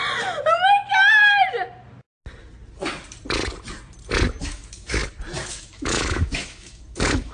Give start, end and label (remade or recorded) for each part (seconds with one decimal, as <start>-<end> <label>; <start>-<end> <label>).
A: 0.0-4.4 recorded; 4.4-5.0 remade; 5.0-5.5 recorded; 5.5-7.3 remade

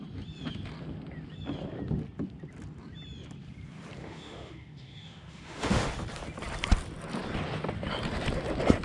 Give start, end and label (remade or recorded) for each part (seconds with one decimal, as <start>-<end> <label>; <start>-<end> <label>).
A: 0.0-4.0 recorded; 4.0-5.9 remade; 5.9-8.8 recorded